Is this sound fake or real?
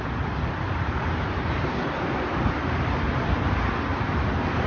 real